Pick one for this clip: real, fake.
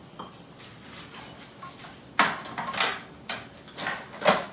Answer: real